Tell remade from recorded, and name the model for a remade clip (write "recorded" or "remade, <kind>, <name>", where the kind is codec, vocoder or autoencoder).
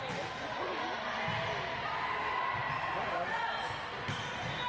recorded